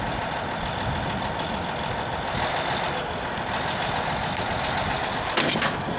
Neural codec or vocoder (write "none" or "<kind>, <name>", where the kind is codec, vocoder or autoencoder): none